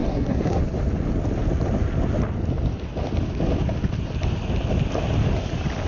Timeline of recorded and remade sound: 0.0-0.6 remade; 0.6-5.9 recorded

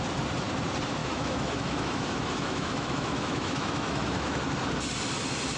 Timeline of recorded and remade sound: 0.0-1.0 recorded; 1.0-4.4 remade; 4.4-5.6 recorded

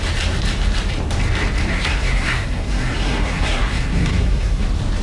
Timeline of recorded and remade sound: 0.0-1.7 recorded; 1.7-4.6 remade; 4.6-5.0 recorded

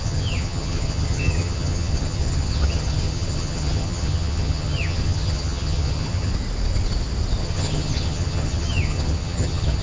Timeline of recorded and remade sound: 0.0-6.3 remade; 6.3-7.4 recorded; 7.4-9.8 remade

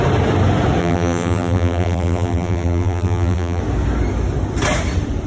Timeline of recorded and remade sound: 0.0-0.8 recorded; 0.8-3.6 remade; 3.6-5.3 recorded

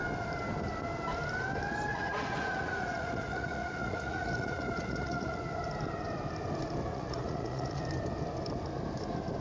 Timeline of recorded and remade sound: 0.0-1.9 recorded; 1.9-5.4 remade; 5.4-6.9 recorded; 6.9-7.8 remade; 7.8-9.4 recorded

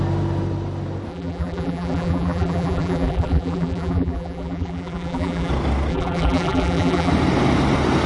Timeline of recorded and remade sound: 0.0-1.1 recorded; 1.1-5.5 remade; 5.5-5.9 recorded; 5.9-7.1 remade; 7.1-8.1 recorded